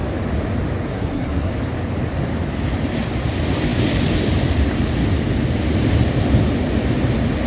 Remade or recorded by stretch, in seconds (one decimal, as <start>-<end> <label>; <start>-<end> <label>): 0.0-0.9 recorded; 0.9-1.5 remade; 1.5-7.5 recorded

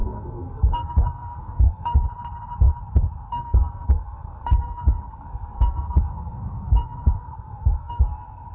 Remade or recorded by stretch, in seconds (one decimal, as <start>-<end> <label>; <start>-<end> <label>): 0.0-2.0 remade; 2.0-3.3 recorded; 3.3-8.5 remade

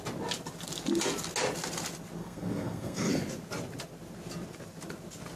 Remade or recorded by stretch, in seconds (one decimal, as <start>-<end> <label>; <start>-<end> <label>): 0.0-2.2 recorded; 2.2-3.1 remade; 3.1-5.4 recorded

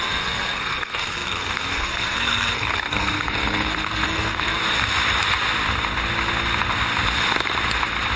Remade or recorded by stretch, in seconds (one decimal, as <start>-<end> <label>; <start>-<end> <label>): 0.0-4.6 remade; 4.6-8.2 recorded

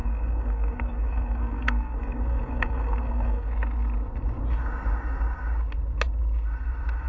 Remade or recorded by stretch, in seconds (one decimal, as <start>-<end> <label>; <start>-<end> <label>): 0.0-3.5 remade; 3.5-7.1 recorded

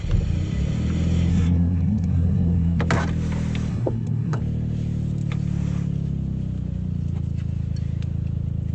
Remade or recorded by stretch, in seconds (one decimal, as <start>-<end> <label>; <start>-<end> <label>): 0.0-1.3 recorded; 1.3-2.8 remade; 2.8-3.7 recorded; 3.7-4.4 remade; 4.4-8.7 recorded

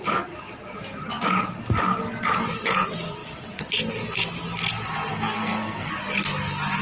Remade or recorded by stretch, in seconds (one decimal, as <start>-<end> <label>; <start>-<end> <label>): 0.0-5.1 recorded; 5.1-5.9 remade; 5.9-6.8 recorded

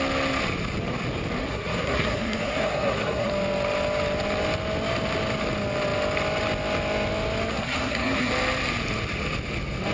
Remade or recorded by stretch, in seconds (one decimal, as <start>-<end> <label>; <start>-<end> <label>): 0.0-1.4 recorded; 1.4-3.3 remade; 3.3-7.5 recorded; 7.5-8.3 remade; 8.3-9.9 recorded